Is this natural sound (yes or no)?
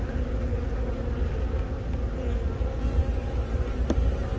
yes